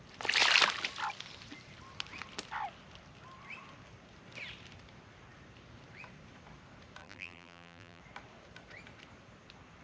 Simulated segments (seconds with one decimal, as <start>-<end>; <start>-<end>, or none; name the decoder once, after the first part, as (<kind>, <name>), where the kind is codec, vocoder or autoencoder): 7.0-8.0 (vocoder, BigVGAN v2)

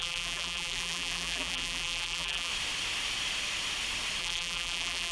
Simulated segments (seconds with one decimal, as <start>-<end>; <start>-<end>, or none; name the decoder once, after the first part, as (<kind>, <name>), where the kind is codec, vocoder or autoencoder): 0.0-2.5 (vocoder, BigVGAN v2); 4.2-5.1

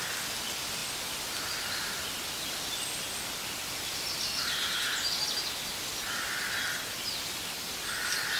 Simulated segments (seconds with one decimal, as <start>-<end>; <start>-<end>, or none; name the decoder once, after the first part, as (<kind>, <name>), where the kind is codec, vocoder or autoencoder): none